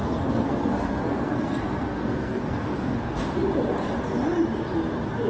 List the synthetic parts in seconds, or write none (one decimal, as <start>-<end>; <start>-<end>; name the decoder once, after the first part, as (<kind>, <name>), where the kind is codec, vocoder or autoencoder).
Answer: 0.0-3.2 (codec, SNAC)